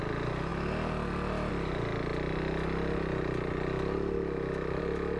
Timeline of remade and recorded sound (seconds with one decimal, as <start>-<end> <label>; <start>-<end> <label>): 0.0-5.2 recorded